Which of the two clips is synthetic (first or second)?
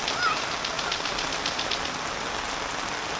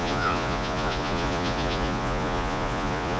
second